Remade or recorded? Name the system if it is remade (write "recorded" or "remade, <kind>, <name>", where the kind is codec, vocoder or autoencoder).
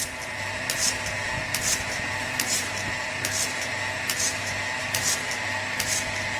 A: recorded